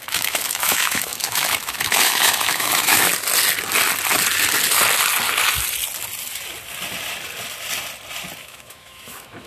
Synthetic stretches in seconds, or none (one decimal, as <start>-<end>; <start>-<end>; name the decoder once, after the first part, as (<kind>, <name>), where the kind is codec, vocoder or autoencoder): 0.0-3.1 (autoencoder, DAC-VAE); 8.4-9.5